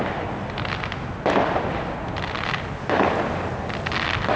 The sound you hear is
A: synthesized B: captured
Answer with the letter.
B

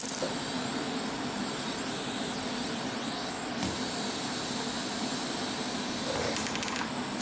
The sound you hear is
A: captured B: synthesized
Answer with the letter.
A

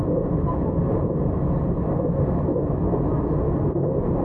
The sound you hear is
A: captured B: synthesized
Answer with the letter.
A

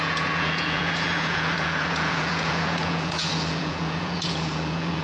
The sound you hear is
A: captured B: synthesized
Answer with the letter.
B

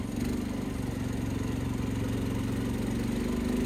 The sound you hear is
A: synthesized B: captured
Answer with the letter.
B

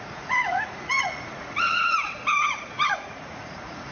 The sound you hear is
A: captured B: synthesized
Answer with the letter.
B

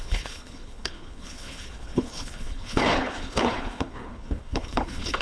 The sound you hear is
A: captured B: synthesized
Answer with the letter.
B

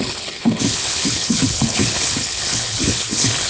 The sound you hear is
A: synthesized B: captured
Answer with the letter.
A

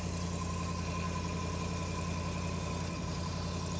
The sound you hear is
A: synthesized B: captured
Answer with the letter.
B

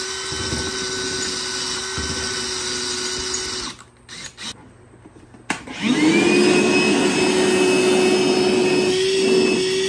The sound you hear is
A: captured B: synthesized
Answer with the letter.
A